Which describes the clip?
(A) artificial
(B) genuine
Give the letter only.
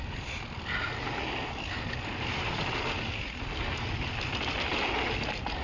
B